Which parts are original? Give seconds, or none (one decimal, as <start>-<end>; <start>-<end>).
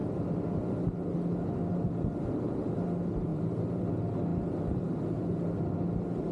0.0-1.7; 2.7-3.3; 3.9-4.3; 5.6-6.3